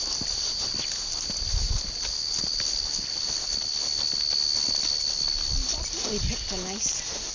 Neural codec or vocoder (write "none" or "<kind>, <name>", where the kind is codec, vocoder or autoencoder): none